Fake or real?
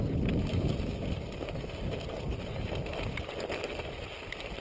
real